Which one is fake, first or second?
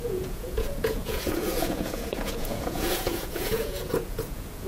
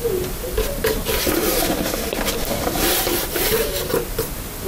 first